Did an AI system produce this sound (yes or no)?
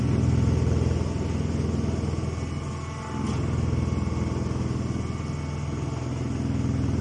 no